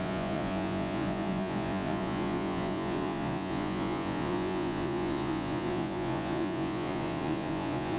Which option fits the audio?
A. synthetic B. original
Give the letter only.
A